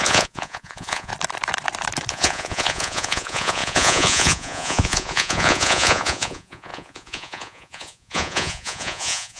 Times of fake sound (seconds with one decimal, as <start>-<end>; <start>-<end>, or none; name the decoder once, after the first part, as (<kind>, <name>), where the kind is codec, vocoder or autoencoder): 0.0-1.1 (vocoder, Vocos); 2.1-9.4